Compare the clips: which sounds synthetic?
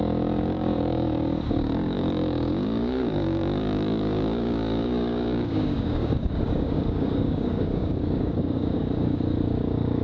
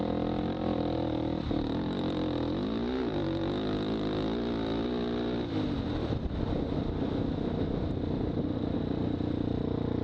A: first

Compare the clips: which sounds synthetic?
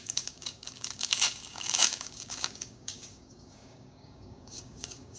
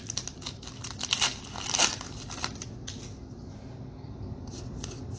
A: first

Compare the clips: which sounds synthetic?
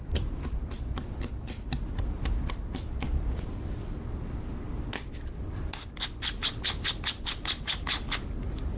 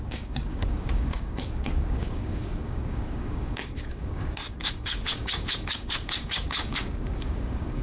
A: second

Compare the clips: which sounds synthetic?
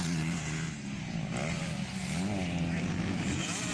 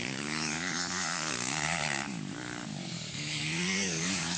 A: second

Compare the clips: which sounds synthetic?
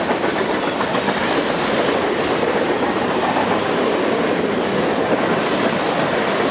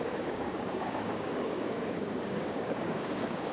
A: second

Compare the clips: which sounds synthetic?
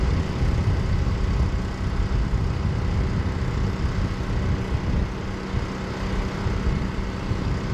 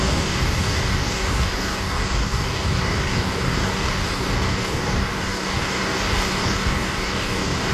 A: second